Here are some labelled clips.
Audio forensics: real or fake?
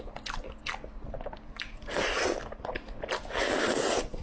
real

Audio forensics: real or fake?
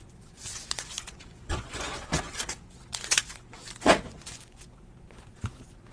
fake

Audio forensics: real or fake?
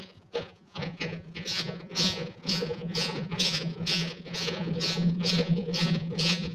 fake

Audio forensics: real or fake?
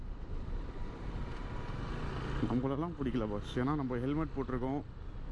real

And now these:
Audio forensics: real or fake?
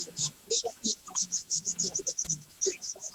fake